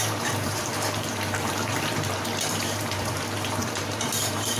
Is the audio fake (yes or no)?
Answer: yes